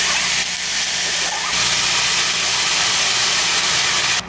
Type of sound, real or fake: real